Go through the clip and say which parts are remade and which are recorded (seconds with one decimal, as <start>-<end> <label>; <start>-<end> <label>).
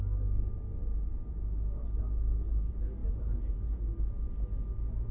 0.0-3.0 recorded; 3.0-3.8 remade; 3.8-5.1 recorded